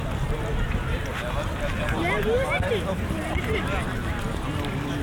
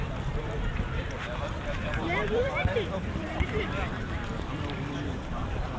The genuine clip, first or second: first